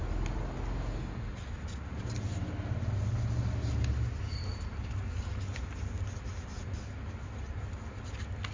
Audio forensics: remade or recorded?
recorded